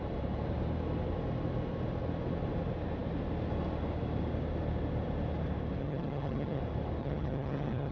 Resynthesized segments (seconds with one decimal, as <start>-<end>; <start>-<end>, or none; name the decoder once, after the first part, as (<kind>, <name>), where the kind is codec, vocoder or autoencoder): 5.8-6.6 (vocoder, HiFi-GAN); 7.0-7.9